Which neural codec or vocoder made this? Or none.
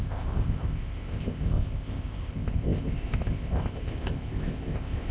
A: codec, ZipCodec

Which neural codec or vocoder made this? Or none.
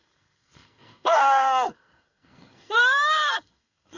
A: codec, SNAC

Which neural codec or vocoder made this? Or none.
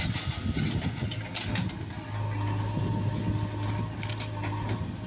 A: none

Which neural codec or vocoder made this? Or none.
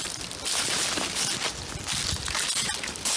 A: none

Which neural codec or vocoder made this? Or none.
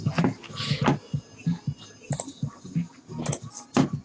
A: none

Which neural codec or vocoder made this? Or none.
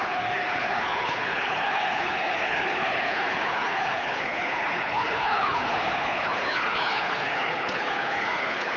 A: codec, HILCodec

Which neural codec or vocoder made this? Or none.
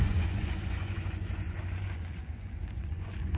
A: vocoder, Vocos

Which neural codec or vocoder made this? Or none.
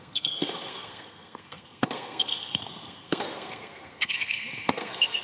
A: codec, SNAC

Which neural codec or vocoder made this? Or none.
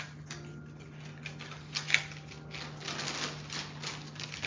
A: none